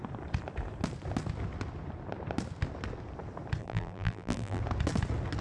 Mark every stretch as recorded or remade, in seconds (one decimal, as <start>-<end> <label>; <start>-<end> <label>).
0.0-3.6 recorded; 3.6-4.6 remade; 4.6-5.4 recorded